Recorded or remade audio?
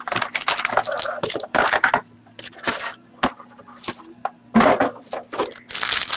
recorded